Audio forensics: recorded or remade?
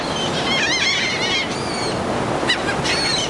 recorded